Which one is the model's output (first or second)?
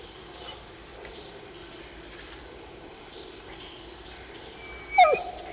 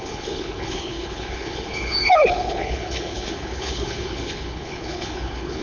second